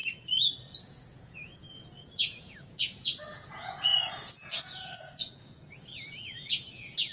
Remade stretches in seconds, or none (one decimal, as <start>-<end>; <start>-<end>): 0.8-7.1